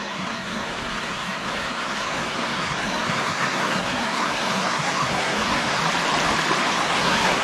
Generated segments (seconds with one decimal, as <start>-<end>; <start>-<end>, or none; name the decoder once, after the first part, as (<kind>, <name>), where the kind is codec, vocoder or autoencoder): 0.0-5.8 (codec, SNAC); 6.6-7.4